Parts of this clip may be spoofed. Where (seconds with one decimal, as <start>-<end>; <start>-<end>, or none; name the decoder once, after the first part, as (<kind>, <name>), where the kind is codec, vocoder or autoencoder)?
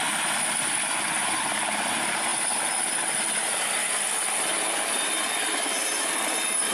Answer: none